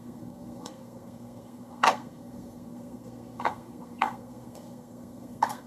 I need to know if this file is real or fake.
fake